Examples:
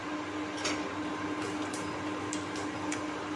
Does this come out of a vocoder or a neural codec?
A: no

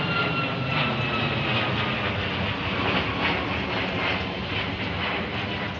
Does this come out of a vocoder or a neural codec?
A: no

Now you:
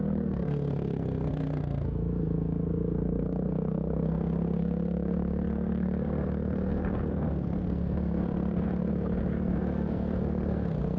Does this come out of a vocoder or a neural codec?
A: yes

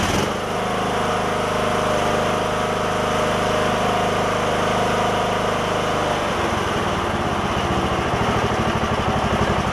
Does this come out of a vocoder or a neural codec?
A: no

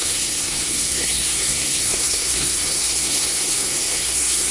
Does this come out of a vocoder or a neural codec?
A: yes